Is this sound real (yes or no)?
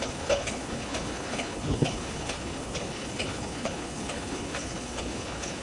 no